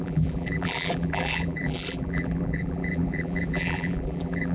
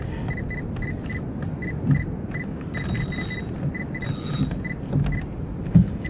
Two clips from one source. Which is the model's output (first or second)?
first